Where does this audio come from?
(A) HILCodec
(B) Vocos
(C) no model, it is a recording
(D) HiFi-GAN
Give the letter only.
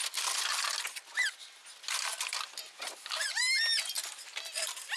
C